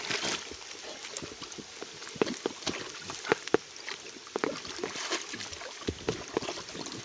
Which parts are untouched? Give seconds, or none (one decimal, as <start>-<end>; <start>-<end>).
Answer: 0.0-7.0